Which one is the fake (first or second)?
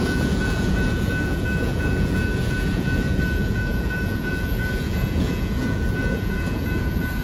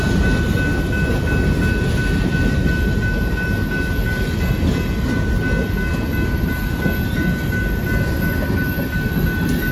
first